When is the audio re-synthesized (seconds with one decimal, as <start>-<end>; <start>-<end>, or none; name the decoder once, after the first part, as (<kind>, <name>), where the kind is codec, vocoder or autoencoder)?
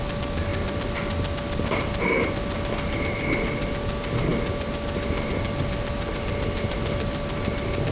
none